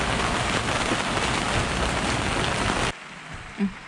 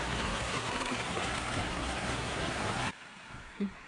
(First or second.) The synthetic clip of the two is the second